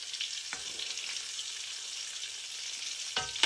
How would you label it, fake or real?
real